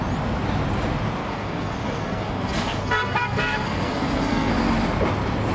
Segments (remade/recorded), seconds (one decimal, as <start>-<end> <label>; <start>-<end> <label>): 0.0-1.2 recorded; 1.2-4.5 remade; 4.5-5.5 recorded